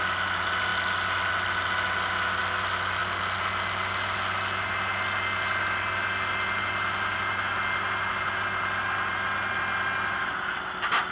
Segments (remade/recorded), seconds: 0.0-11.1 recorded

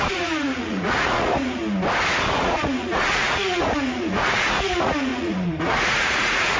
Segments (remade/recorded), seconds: 0.0-1.6 remade; 1.6-2.4 recorded; 2.4-6.6 remade

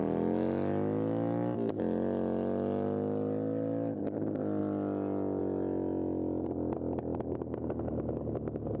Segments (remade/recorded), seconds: 0.0-8.8 recorded